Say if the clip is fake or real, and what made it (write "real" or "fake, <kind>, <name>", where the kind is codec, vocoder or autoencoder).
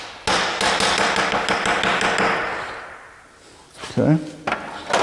real